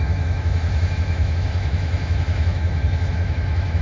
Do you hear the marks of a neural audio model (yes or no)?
yes